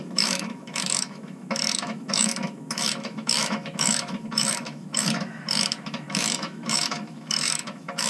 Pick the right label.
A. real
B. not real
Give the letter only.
B